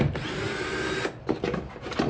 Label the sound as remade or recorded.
recorded